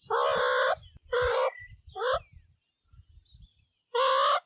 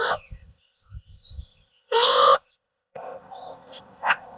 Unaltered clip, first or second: first